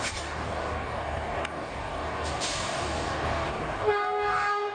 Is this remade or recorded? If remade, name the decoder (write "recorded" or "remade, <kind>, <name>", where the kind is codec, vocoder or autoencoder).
remade, codec, DAC